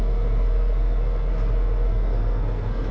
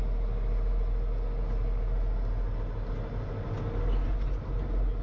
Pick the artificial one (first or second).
first